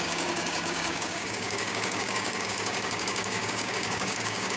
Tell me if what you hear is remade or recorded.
remade